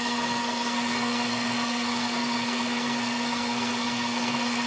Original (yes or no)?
no